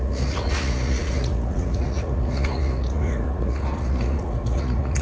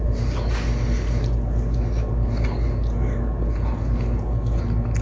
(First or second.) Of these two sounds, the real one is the second